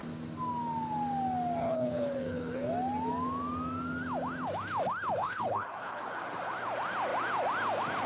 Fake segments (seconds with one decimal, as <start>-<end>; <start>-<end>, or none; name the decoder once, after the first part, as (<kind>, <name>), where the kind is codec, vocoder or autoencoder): 1.6-2.7 (codec, HILCodec); 5.2-6.0